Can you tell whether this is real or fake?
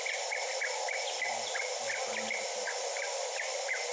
real